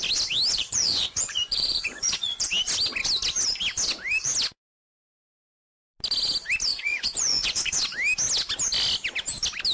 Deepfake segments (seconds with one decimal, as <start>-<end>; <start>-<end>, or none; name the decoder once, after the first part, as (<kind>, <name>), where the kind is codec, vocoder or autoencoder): 0.5-2.5 (vocoder, Vocos); 6.7-7.8